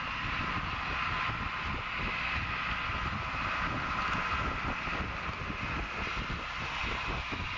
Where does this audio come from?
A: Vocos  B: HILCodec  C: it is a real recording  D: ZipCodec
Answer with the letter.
C